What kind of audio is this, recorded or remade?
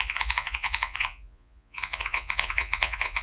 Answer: remade